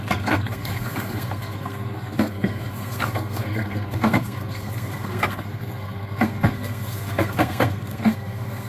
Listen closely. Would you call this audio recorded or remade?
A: remade